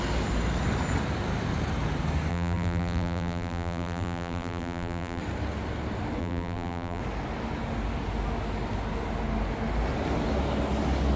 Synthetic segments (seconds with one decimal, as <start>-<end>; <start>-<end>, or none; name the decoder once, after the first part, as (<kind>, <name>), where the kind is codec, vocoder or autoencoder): 2.3-5.2 (vocoder, BigVGAN v2); 6.2-7.0